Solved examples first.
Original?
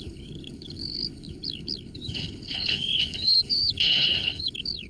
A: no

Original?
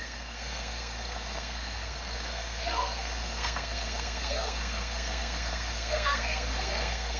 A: no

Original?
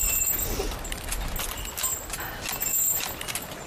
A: yes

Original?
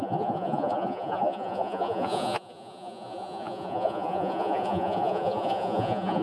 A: no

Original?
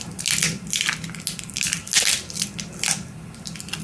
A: yes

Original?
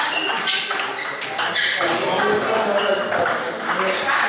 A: yes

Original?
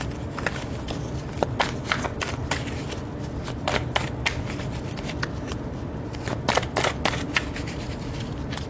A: yes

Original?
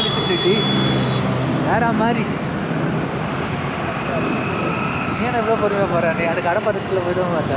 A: yes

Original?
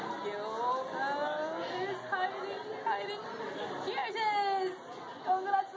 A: yes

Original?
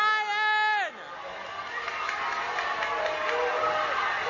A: yes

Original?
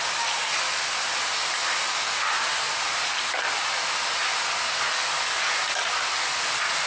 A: yes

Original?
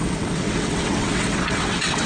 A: no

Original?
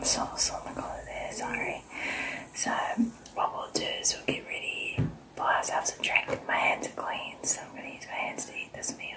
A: yes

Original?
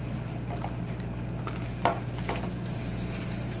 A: yes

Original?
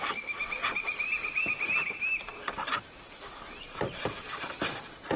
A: no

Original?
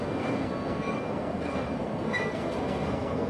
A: no